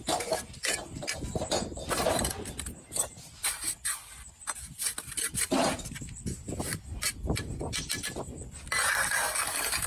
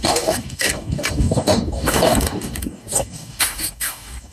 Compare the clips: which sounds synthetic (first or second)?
second